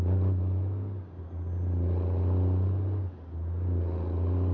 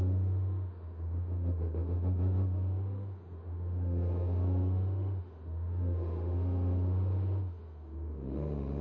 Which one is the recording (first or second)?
first